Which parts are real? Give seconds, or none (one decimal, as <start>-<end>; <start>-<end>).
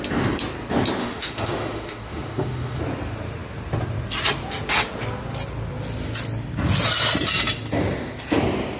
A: 0.0-1.0; 2.8-8.8